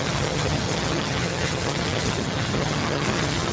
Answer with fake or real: fake